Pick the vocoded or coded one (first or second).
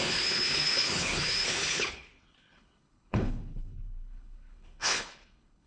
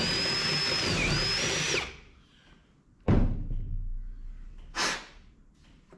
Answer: first